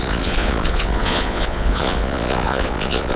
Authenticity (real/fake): fake